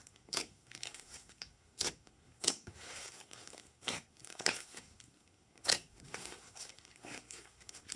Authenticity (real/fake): fake